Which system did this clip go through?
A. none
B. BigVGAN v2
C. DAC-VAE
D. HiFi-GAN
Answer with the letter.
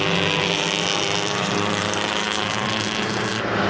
B